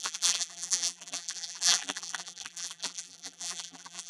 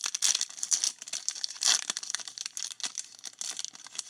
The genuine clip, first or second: second